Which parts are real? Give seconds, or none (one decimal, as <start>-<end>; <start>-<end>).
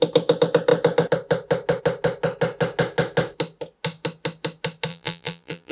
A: 0.0-4.9